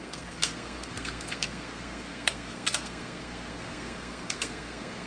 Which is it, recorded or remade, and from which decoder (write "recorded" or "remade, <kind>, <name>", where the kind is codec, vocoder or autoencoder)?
remade, codec, SNAC